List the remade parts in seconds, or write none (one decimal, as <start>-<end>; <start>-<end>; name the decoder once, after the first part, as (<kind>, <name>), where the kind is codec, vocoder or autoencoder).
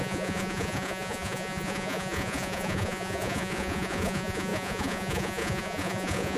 0.0-6.4 (vocoder, Vocos)